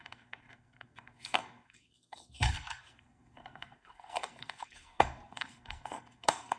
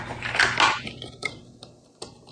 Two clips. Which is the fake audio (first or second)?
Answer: first